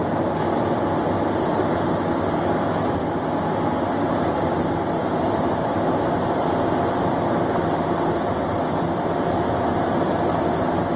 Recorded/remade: recorded